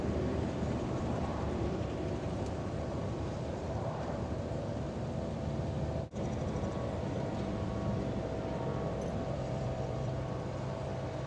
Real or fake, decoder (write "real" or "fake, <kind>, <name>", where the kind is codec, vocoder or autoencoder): fake, vocoder, BigVGAN v2